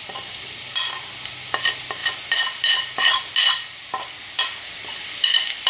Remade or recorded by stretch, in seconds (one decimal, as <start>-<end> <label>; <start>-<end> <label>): 0.0-5.7 recorded